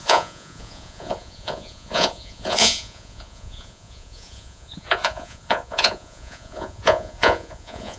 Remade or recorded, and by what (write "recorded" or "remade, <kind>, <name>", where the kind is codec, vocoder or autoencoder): remade, vocoder, Vocos